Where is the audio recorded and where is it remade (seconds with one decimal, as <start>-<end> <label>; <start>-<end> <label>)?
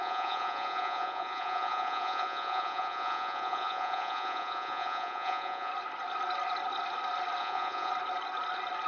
0.0-5.7 remade; 5.7-7.4 recorded; 7.4-7.9 remade; 7.9-8.9 recorded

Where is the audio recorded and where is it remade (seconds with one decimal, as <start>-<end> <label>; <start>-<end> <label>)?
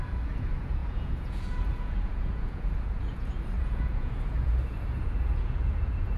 0.0-6.2 remade